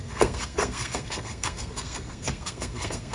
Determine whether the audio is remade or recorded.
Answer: remade